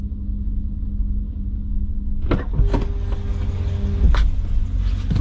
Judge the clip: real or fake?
real